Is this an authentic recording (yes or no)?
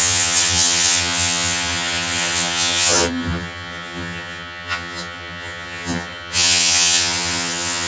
no